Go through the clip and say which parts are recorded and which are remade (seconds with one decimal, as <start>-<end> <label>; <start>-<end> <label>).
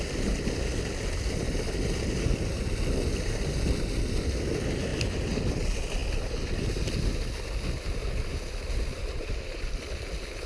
0.0-10.5 recorded